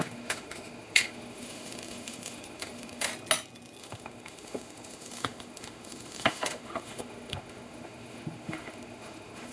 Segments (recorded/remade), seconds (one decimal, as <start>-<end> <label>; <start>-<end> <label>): 0.0-3.1 remade; 3.1-3.8 recorded; 3.8-9.5 remade